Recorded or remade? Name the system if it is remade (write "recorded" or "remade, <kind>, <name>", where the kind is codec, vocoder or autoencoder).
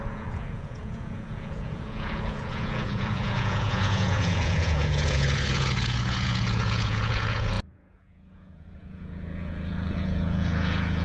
remade, vocoder, Vocos